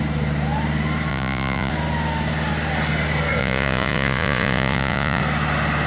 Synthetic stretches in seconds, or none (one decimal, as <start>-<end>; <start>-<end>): 1.1-1.7; 3.4-5.2